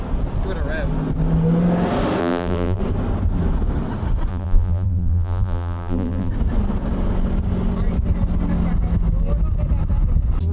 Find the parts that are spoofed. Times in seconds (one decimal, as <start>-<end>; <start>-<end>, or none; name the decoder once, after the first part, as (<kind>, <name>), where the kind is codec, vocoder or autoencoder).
2.2-2.8 (vocoder, BigVGAN v2); 4.3-6.3